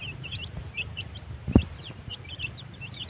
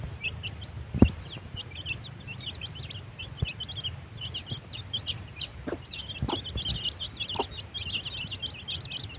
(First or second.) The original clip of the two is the second